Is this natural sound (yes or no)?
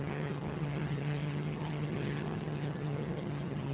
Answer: no